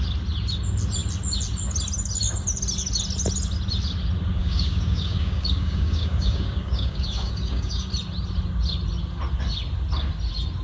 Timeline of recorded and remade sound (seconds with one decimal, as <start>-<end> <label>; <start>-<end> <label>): 0.0-4.4 recorded; 4.4-7.9 remade; 7.9-10.6 recorded